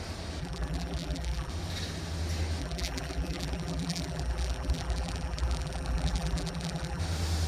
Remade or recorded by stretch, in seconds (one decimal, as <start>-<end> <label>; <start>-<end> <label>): 0.0-0.4 recorded; 0.4-1.5 remade; 1.5-2.6 recorded; 2.6-7.0 remade; 7.0-7.5 recorded